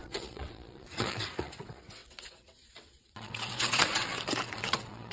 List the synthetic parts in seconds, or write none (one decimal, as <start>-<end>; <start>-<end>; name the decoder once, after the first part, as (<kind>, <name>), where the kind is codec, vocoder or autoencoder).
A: 0.0-5.1 (vocoder, WaveNeXt)